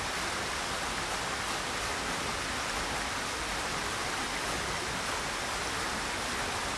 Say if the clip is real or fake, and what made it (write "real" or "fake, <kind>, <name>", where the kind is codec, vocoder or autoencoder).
real